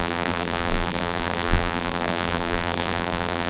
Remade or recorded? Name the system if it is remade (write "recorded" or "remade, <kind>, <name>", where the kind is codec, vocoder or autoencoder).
remade, vocoder, BigVGAN v2